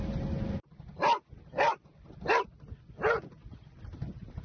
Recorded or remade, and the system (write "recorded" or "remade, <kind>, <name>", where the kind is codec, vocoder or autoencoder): recorded